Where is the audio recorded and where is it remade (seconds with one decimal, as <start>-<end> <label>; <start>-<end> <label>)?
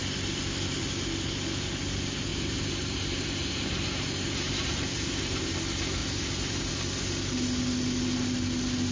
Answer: 0.0-2.3 recorded; 2.3-5.4 remade; 5.4-6.0 recorded; 6.0-6.7 remade; 6.7-8.9 recorded